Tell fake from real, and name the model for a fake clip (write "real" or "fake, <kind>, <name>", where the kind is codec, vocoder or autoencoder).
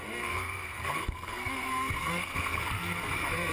fake, codec, SNAC